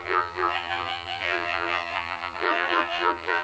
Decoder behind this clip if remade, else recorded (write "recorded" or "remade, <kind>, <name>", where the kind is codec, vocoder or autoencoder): remade, vocoder, BigVGAN v2